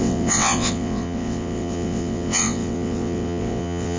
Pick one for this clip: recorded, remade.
remade